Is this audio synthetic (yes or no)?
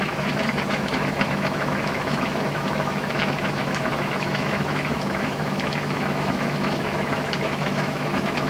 yes